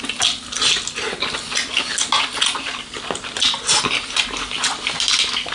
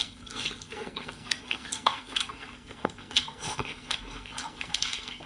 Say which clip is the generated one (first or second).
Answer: second